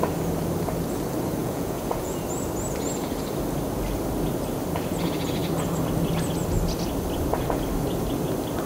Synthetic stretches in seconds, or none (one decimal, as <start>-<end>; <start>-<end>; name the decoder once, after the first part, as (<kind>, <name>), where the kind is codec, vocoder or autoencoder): 1.4-2.2 (vocoder, Vocos)

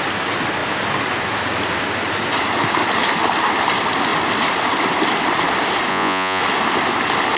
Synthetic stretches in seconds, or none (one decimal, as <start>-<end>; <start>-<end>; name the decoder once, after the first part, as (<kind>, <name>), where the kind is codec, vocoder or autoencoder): 5.9-6.4 (vocoder, Vocos)

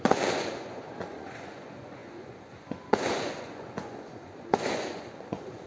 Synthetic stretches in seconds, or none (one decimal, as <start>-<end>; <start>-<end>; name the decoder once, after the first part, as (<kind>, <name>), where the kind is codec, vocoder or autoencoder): 0.0-5.7 (vocoder, Vocos)

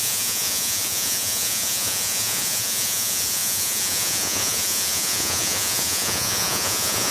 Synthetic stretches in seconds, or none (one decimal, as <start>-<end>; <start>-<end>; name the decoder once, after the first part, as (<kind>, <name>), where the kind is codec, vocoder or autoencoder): 0.0-7.1 (vocoder, Vocos)

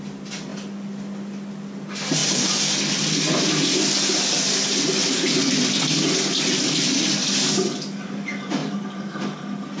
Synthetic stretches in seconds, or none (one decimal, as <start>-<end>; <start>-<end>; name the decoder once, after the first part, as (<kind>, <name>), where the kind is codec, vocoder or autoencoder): none

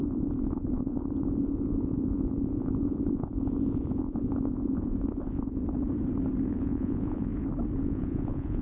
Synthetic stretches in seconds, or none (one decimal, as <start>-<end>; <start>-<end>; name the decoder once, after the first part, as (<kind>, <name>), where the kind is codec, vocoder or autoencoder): 0.0-5.6 (vocoder, Vocos); 6.5-7.3; 7.8-8.6

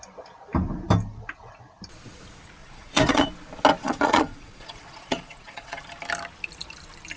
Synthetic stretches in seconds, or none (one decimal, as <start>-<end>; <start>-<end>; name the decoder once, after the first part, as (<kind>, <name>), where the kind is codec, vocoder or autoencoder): 2.6-3.3 (vocoder, Vocos); 3.8-5.8

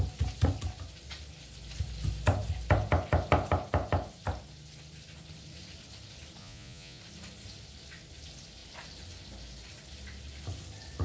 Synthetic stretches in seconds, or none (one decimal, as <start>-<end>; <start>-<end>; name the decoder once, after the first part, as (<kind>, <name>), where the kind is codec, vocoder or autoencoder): 6.4-7.0 (vocoder, Vocos)